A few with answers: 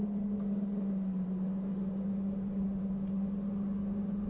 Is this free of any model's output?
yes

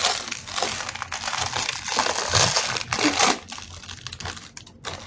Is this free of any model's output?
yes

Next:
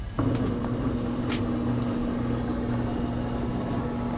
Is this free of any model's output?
yes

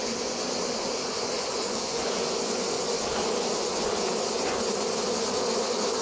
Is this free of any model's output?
no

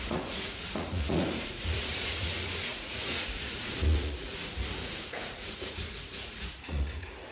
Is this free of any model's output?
no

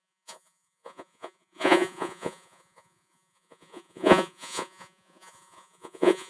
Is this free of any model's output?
no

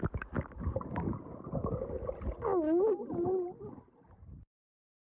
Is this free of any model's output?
yes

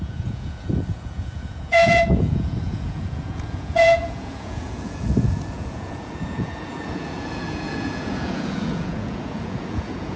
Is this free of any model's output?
no